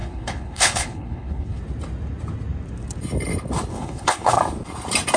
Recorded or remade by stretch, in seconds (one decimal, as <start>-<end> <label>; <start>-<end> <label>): 0.0-1.6 remade; 1.6-3.7 recorded; 3.7-4.4 remade; 4.4-5.2 recorded

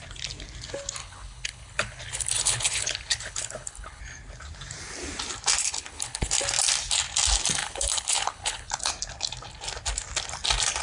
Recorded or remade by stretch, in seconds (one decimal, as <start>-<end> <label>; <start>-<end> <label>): 0.0-1.0 recorded; 1.0-4.0 remade; 4.0-5.6 recorded; 5.6-6.3 remade; 6.3-7.6 recorded; 7.6-8.7 remade; 8.7-10.8 recorded

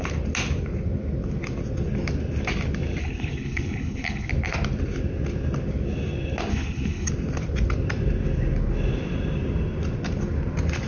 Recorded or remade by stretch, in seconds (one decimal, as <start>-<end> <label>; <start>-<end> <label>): 0.0-3.0 recorded; 3.0-4.3 remade; 4.3-6.5 recorded; 6.5-7.1 remade; 7.1-10.9 recorded

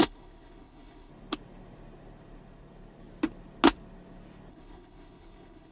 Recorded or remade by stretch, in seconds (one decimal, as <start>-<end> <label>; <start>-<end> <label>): 0.0-1.1 remade; 1.1-4.5 recorded; 4.5-5.7 remade

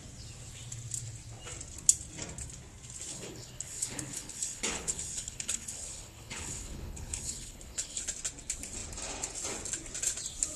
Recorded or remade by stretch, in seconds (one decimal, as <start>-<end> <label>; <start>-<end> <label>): 0.0-3.1 recorded; 3.1-8.0 remade; 8.0-10.6 recorded

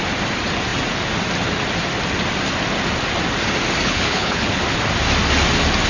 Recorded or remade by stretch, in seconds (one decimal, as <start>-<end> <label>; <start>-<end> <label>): 0.0-3.8 recorded; 3.8-4.6 remade; 4.6-5.9 recorded